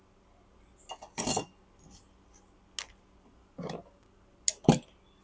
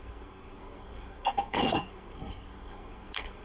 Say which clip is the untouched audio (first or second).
first